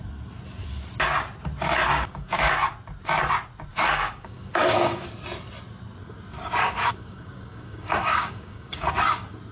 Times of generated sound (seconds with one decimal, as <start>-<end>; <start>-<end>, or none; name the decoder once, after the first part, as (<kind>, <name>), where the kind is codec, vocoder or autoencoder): 1.9-2.5 (codec, DAC); 3.7-5.1; 6.6-8.9